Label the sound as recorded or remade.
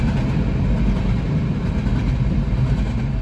recorded